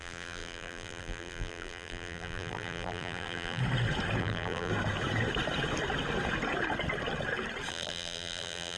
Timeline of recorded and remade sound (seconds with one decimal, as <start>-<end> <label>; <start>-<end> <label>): 0.0-3.6 remade; 3.6-4.2 recorded; 4.2-4.7 remade; 4.7-7.7 recorded; 7.7-8.8 remade